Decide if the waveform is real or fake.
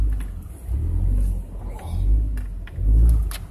real